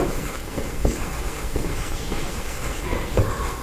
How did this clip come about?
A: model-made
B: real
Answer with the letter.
A